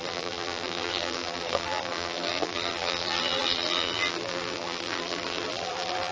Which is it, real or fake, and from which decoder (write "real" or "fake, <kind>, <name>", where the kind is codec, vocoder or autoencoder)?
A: fake, vocoder, BigVGAN v2